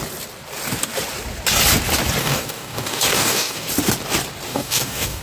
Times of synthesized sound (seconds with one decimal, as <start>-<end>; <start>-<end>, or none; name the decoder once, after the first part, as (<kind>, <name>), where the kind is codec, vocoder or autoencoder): 2.2-3.7 (codec, DAC); 4.5-5.2